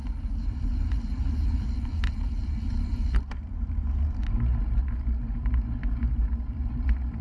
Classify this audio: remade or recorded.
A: remade